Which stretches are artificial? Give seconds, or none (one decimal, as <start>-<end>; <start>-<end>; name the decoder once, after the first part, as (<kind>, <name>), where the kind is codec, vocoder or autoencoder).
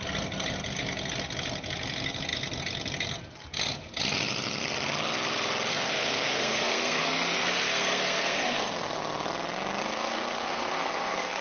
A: 5.7-9.0 (codec, SNAC); 9.8-11.4